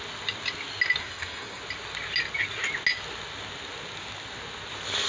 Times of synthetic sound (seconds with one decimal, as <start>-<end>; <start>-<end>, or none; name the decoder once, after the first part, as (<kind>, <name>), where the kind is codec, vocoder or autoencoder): 1.0-1.6 (codec, SNAC)

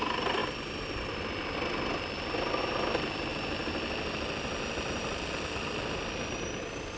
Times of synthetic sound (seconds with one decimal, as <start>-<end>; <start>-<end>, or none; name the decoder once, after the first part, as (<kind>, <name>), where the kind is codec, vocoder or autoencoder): none

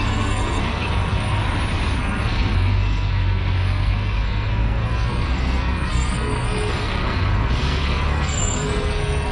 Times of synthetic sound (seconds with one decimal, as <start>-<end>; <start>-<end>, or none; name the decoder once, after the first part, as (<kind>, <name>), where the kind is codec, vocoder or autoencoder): 0.0-1.4 (codec, SNAC); 2.0-9.3

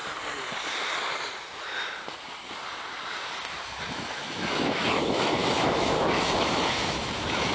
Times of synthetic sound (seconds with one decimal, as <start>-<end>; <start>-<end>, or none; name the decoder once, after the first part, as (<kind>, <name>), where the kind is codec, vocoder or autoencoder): 4.1-7.5 (autoencoder, DAC-VAE)